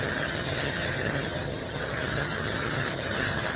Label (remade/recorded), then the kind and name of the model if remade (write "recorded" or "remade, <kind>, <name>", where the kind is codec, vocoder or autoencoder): remade, vocoder, HiFi-GAN